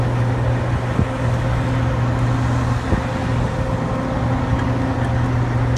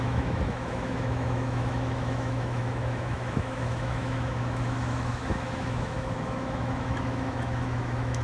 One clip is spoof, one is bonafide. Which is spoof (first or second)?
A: second